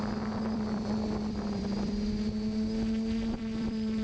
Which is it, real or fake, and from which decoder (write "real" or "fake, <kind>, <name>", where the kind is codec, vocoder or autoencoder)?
fake, vocoder, BigVGAN v2